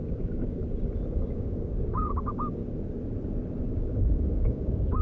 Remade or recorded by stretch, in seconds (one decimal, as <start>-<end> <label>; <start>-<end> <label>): 0.0-0.6 remade; 0.6-1.3 recorded; 1.3-2.6 remade; 2.6-3.6 recorded; 3.6-5.0 remade